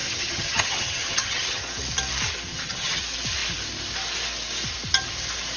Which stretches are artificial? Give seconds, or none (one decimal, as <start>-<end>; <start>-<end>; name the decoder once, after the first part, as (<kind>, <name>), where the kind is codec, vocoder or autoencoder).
0.0-1.6 (vocoder, HiFi-GAN); 2.5-3.0